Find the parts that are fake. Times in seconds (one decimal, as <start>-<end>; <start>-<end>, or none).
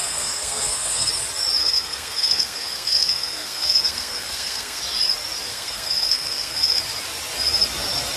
0.0-1.1; 1.6-4.8; 5.5-6.8